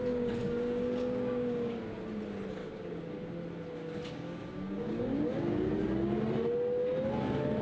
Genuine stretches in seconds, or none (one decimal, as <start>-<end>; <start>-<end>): 0.0-0.4; 1.9-2.6; 3.3-3.8; 5.7-7.6